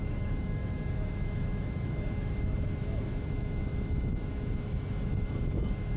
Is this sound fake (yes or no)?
yes